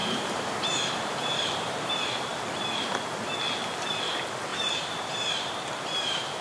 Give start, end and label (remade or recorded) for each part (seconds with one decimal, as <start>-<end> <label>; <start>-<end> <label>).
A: 0.0-1.9 remade; 1.9-4.5 recorded; 4.5-6.4 remade